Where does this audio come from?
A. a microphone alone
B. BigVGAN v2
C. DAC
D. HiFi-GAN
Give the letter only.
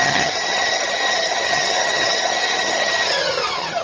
D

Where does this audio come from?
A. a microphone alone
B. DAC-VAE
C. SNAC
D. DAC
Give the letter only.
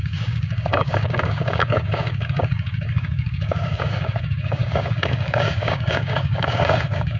D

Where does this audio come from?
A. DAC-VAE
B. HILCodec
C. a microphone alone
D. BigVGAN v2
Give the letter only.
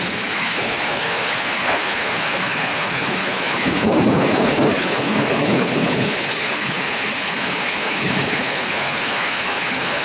B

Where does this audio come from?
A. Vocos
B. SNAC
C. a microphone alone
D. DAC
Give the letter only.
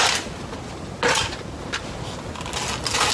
C